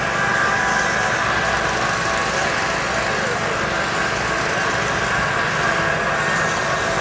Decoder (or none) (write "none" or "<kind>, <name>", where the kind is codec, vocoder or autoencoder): none